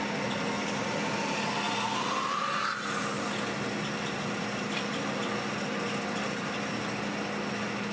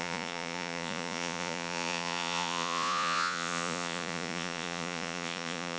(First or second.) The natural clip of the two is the first